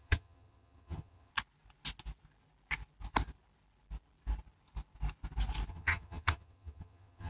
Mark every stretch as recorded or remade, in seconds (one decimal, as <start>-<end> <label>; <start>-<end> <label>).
0.0-1.3 remade; 1.3-5.7 recorded; 5.7-7.3 remade